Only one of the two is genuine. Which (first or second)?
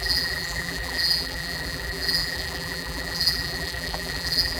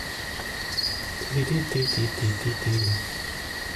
second